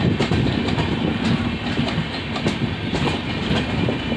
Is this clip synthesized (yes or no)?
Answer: no